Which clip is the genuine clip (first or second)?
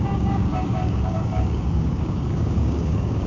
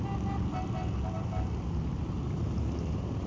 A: second